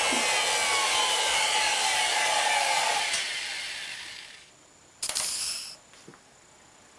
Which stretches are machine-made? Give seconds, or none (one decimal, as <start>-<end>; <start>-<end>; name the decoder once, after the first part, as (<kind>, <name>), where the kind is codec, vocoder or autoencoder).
0.7-2.9 (codec, DAC); 3.9-4.5